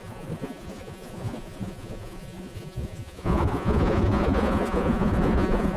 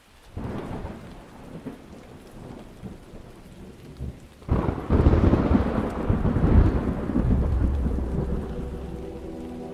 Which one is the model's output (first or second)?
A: first